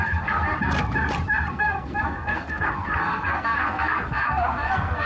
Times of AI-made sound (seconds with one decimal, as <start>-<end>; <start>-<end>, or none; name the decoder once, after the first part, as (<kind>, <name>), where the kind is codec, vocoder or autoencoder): 0.0-0.5 (codec, SNAC); 1.5-5.1